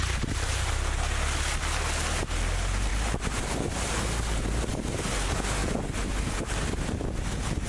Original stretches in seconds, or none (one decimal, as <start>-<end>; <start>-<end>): 0.0-7.7